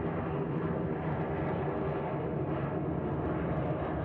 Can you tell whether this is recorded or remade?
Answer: recorded